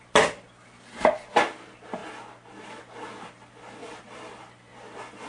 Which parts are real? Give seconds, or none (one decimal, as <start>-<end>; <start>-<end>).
0.0-5.3